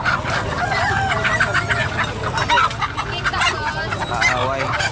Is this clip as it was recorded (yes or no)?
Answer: yes